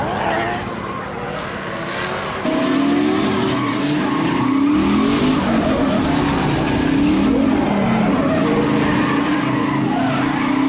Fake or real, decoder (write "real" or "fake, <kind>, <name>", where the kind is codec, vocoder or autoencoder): real